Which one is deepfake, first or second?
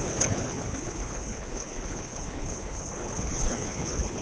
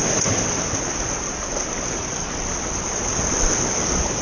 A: first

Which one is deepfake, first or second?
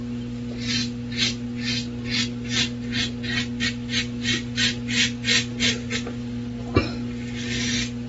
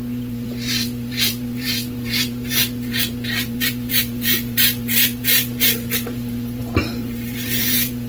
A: second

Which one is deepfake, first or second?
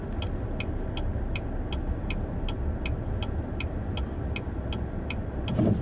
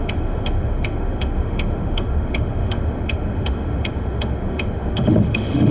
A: second